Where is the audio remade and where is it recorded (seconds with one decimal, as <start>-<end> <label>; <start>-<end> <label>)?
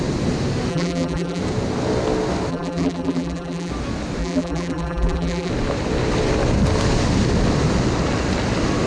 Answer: 0.0-0.7 recorded; 0.7-1.4 remade; 1.4-2.5 recorded; 2.5-3.7 remade; 3.7-4.2 recorded; 4.2-5.5 remade; 5.5-8.9 recorded